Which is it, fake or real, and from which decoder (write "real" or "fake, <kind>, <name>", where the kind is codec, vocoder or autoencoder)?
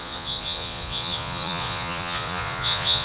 fake, vocoder, Vocos